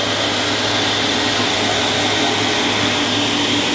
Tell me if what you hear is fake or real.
real